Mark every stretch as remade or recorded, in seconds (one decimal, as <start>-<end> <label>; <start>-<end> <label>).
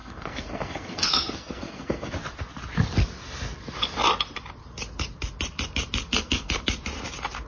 0.0-2.1 remade; 2.1-6.1 recorded; 6.1-6.6 remade; 6.6-7.5 recorded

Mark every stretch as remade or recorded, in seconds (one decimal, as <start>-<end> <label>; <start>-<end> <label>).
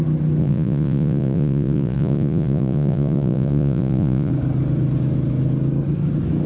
0.0-0.4 recorded; 0.4-4.3 remade; 4.3-6.5 recorded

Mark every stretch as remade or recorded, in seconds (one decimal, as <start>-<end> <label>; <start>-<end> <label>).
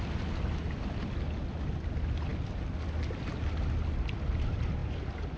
0.0-5.4 recorded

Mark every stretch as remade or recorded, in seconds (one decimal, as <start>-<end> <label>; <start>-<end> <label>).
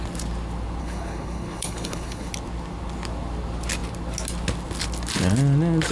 0.0-0.8 recorded; 0.8-2.3 remade; 2.3-5.9 recorded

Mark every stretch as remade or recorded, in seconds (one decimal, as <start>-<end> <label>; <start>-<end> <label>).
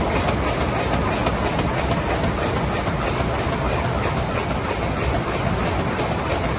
0.0-4.4 recorded; 4.4-5.0 remade; 5.0-6.6 recorded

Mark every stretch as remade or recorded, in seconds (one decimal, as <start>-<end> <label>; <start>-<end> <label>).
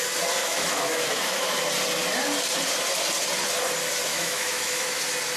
0.0-0.4 recorded; 0.4-1.6 remade; 1.6-4.1 recorded; 4.1-5.0 remade; 5.0-5.4 recorded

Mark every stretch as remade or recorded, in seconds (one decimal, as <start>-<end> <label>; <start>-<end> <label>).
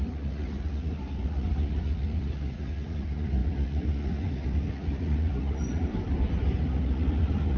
0.0-5.9 remade; 5.9-6.6 recorded; 6.6-7.6 remade